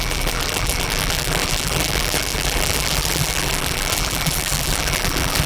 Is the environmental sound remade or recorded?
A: remade